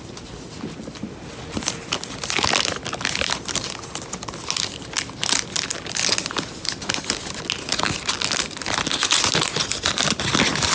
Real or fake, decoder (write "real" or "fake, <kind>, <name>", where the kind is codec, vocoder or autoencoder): real